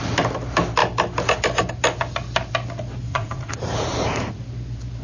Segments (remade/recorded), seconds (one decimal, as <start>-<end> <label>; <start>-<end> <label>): 0.0-3.1 recorded; 3.1-4.4 remade; 4.4-5.0 recorded